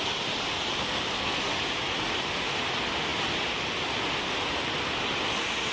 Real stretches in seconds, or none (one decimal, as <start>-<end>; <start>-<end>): 0.0-0.8; 1.4-5.7